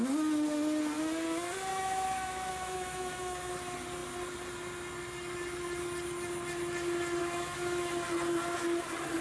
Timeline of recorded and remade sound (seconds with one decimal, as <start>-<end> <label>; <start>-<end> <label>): 0.0-1.7 recorded; 1.7-3.5 remade; 3.5-7.2 recorded; 7.2-7.9 remade; 7.9-9.2 recorded